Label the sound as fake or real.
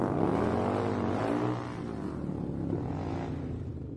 real